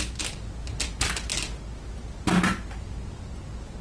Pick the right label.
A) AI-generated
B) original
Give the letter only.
B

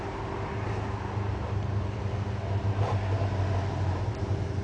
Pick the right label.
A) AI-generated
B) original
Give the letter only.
B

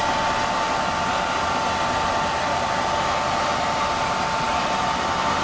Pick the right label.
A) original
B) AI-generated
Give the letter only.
A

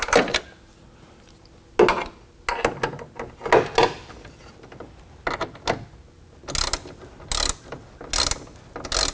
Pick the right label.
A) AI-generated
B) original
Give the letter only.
B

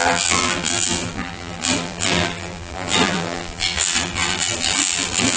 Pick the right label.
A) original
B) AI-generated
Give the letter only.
B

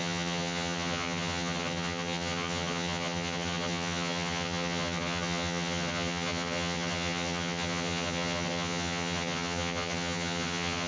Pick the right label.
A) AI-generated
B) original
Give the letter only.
A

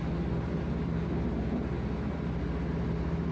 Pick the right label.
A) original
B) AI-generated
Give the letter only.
A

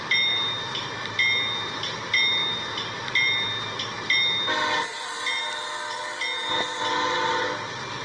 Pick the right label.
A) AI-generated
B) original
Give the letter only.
B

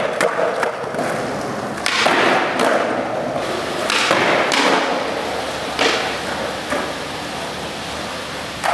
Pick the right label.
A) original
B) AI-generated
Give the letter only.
A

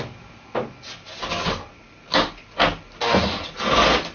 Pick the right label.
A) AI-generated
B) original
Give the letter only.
B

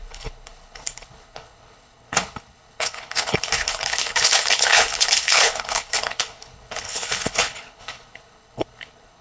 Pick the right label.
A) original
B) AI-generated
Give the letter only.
B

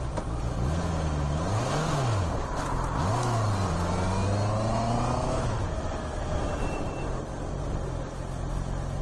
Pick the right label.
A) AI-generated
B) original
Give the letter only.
B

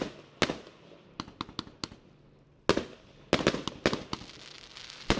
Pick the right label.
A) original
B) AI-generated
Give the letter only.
A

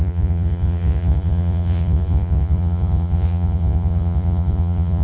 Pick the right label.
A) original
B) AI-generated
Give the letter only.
B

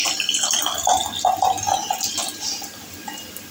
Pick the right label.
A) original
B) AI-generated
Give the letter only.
A